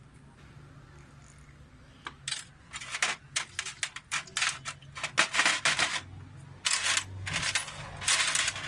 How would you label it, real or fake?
real